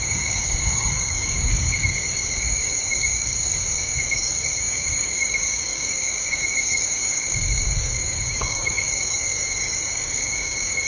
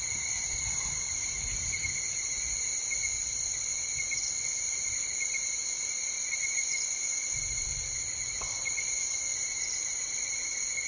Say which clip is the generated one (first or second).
first